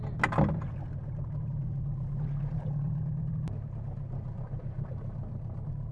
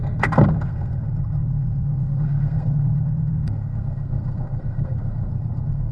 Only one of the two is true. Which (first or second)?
first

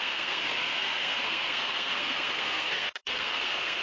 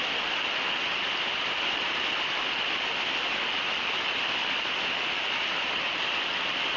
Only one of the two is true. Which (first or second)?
second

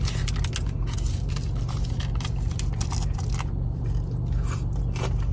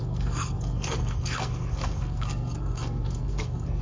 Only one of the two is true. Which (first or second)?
first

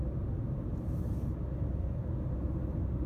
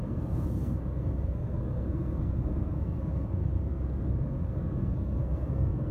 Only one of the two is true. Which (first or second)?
first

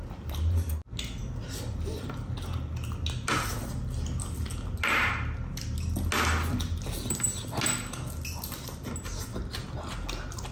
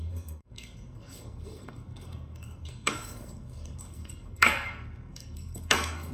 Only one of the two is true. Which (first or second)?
first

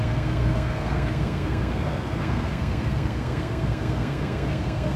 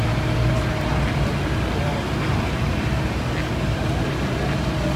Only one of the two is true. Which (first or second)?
second